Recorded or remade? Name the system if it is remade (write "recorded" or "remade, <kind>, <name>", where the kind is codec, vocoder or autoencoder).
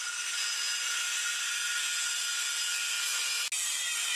recorded